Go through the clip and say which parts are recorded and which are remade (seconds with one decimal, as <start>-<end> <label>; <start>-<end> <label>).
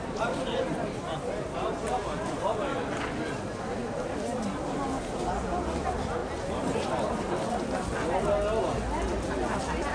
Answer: 0.0-9.9 recorded